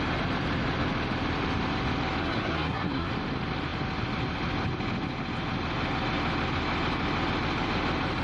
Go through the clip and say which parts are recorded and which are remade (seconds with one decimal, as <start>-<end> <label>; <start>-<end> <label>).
0.0-2.2 recorded; 2.2-3.1 remade; 3.1-8.2 recorded